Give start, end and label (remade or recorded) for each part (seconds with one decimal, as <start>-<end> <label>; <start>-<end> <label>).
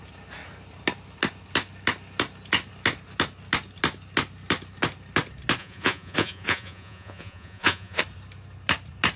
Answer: 0.0-5.6 recorded; 5.6-8.0 remade; 8.0-9.2 recorded